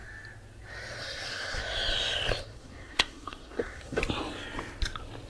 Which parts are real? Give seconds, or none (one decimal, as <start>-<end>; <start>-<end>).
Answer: 0.0-1.0; 1.6-2.4; 4.0-5.3